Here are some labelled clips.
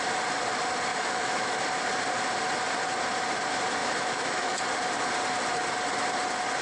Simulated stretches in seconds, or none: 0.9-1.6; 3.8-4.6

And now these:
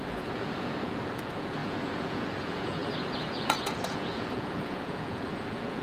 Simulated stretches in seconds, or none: 0.0-5.8

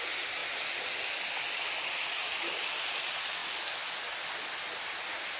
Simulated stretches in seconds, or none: none

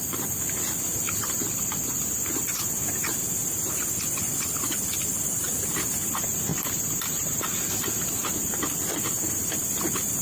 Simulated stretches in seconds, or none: none

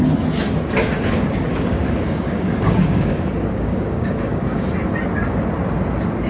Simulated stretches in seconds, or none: 0.9-4.7

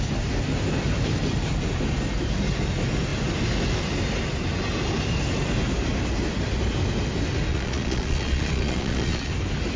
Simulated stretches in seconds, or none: 7.5-9.3